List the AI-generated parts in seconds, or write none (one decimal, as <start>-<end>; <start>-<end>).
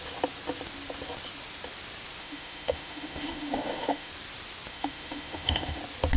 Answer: 2.2-4.1; 4.7-5.8